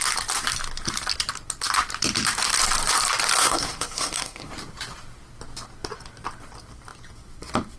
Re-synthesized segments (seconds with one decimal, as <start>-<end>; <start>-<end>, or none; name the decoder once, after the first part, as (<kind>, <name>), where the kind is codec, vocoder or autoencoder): 3.4-4.5 (codec, SNAC)